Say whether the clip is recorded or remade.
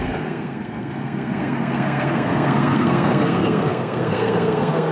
remade